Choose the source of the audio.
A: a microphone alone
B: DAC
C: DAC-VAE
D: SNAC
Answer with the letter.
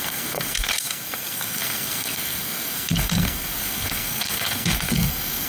D